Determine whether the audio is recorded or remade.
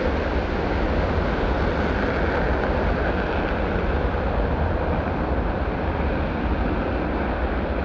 recorded